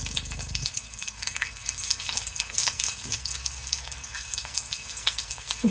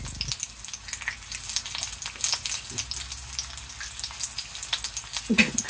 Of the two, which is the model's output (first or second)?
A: first